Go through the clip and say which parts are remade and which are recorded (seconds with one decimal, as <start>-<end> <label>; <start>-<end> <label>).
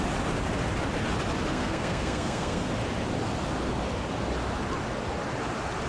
0.0-1.5 recorded; 1.5-2.7 remade; 2.7-5.9 recorded